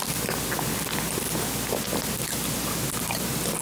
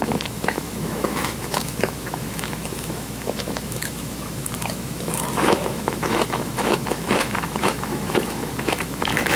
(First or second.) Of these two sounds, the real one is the first